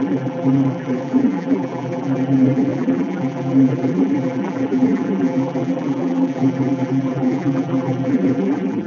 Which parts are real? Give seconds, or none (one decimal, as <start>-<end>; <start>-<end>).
none